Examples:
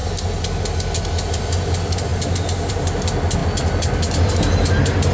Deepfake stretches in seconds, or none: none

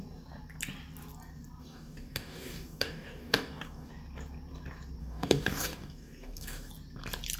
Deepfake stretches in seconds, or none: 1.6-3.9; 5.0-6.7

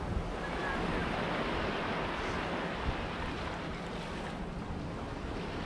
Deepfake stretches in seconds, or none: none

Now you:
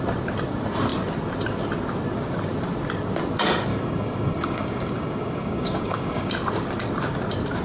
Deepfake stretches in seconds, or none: 3.7-6.3

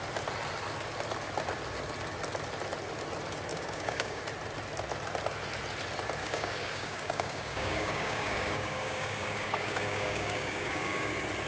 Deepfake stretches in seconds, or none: 3.5-4.2; 6.2-11.1

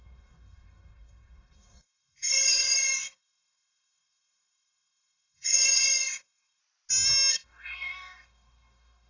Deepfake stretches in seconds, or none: 0.0-6.6; 7.3-9.1